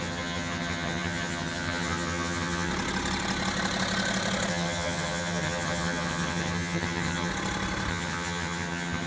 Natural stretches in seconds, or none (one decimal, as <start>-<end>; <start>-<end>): 2.7-4.5; 7.3-7.9